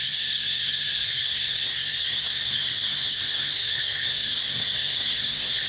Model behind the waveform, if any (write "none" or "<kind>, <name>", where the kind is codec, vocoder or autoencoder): codec, SNAC